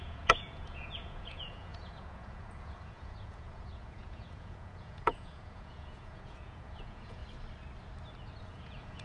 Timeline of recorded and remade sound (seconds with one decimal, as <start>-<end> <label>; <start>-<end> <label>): 0.0-7.2 remade; 7.2-8.4 recorded; 8.4-9.0 remade